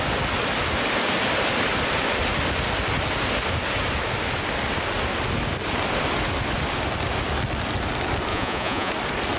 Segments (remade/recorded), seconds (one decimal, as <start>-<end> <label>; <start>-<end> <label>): 0.0-8.3 recorded; 8.3-8.9 remade; 8.9-9.4 recorded

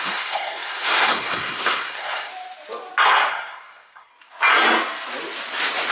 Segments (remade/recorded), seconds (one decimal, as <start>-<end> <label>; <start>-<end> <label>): 0.0-2.3 remade; 2.3-3.3 recorded; 3.3-4.1 remade; 4.1-5.9 recorded

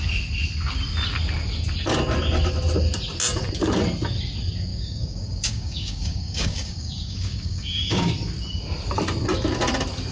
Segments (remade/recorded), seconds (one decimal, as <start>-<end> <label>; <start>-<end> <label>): 0.0-4.7 recorded; 4.7-8.1 remade; 8.1-10.1 recorded

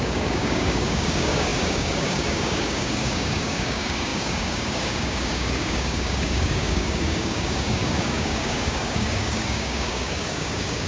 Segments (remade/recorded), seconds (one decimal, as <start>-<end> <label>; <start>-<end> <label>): 0.0-10.9 remade

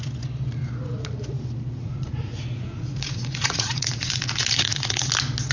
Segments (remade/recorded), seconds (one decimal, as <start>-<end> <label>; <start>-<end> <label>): 0.0-1.8 recorded; 1.8-5.1 remade; 5.1-5.5 recorded

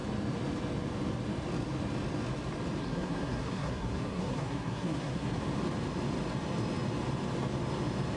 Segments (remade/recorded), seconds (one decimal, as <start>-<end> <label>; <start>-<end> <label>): 0.0-2.8 recorded; 2.8-5.4 remade; 5.4-8.2 recorded